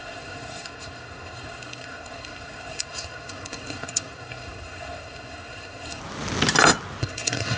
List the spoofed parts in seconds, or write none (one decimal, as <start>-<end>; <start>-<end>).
0.0-6.0; 7.0-7.6